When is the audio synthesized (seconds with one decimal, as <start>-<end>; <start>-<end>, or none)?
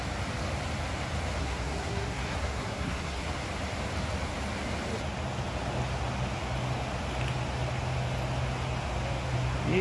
1.4-3.3